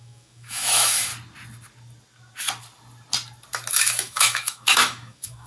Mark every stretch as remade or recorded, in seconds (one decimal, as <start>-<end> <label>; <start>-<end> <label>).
0.0-1.1 remade; 1.1-3.7 recorded; 3.7-5.5 remade